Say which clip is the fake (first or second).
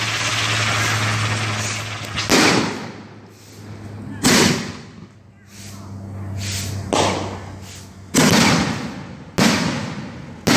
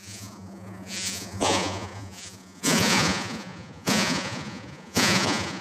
second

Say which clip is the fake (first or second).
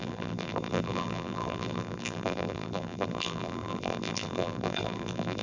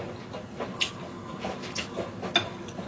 first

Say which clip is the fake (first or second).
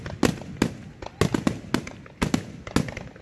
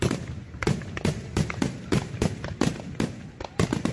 second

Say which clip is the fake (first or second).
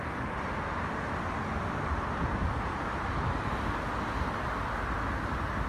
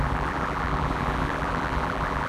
second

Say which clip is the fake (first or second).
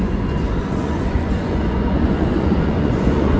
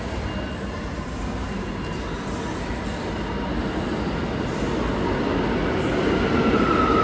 first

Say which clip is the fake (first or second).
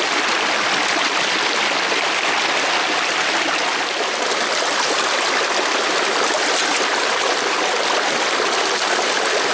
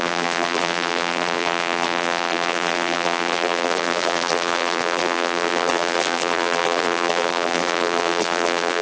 second